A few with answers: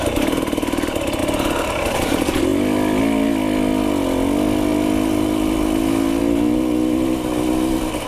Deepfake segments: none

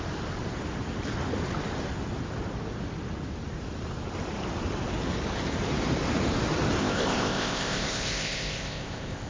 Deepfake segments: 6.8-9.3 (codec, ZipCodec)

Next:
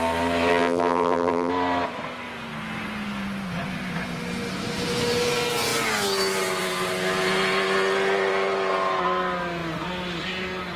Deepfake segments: 0.5-1.5 (vocoder, BigVGAN v2)

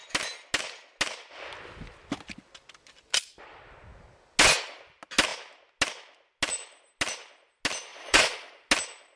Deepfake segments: 7.9-8.7 (vocoder, Vocos)